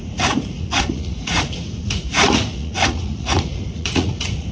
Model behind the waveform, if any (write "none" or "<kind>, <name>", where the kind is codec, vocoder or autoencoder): vocoder, Vocos